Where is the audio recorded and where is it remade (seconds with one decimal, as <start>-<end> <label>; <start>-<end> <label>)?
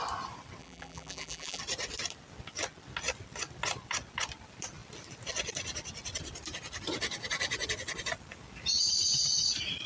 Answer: 0.0-0.6 recorded; 0.6-1.6 remade; 1.6-9.9 recorded